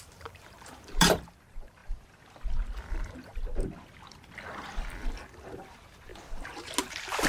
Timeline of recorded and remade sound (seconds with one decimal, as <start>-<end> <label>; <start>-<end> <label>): 0.0-1.8 remade; 1.8-2.9 recorded; 2.9-3.3 remade; 3.3-5.5 recorded; 5.5-6.1 remade; 6.1-6.8 recorded; 6.8-7.3 remade

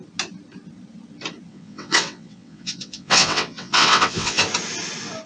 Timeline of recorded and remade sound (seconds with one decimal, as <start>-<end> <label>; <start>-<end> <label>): 0.0-1.5 recorded; 1.5-4.4 remade; 4.4-5.3 recorded

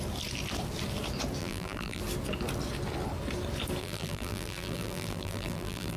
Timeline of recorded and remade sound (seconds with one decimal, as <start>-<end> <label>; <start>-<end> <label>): 0.0-1.4 recorded; 1.4-2.0 remade; 2.0-3.8 recorded; 3.8-6.0 remade

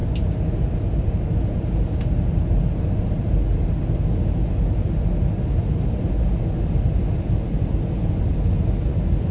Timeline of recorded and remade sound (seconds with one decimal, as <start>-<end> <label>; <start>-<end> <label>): 0.0-9.3 recorded